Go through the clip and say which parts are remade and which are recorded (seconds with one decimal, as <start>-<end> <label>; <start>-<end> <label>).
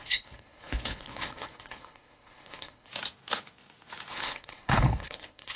0.0-2.9 remade; 2.9-4.1 recorded; 4.1-5.6 remade